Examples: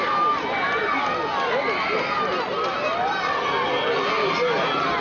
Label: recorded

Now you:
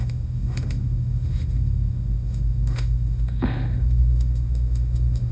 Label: remade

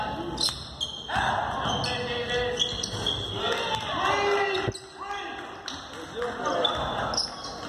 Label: recorded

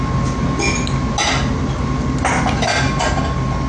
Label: recorded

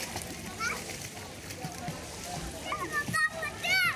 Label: recorded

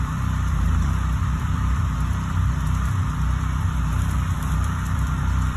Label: remade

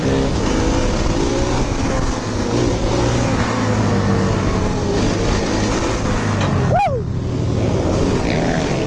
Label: recorded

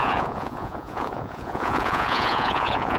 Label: remade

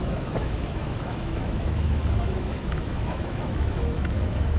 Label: remade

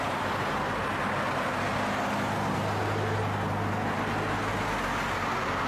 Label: recorded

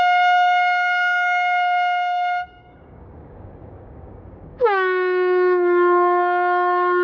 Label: remade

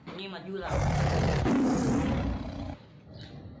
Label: recorded